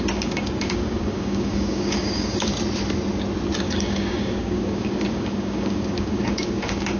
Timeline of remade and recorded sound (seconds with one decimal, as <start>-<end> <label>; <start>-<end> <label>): 0.0-2.5 remade; 2.5-3.6 recorded; 3.6-7.0 remade